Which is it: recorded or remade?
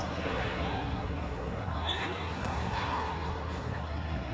remade